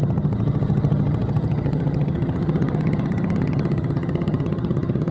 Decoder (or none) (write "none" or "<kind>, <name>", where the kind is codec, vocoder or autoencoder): vocoder, HiFi-GAN